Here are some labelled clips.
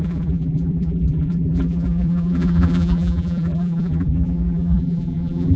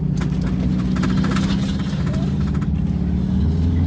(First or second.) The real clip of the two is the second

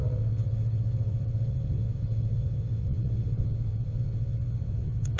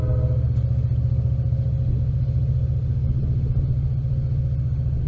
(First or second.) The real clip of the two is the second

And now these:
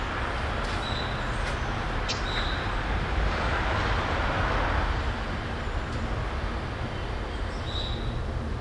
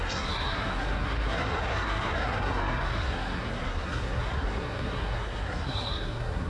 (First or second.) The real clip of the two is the first